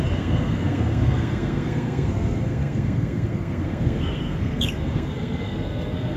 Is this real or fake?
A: fake